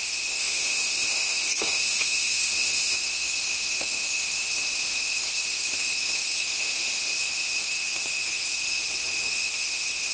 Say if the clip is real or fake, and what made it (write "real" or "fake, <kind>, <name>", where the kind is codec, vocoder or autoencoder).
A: fake, autoencoder, DAC-VAE